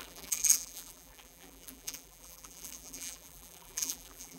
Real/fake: fake